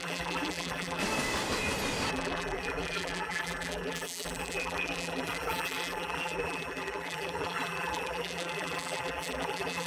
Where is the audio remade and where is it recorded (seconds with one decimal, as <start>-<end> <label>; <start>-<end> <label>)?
0.0-1.0 remade; 1.0-2.1 recorded; 2.1-9.9 remade